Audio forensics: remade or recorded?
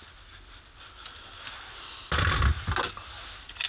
recorded